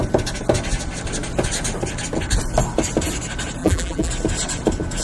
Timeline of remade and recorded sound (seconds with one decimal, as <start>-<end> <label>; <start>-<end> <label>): 0.0-3.6 recorded; 3.6-4.1 remade; 4.1-5.0 recorded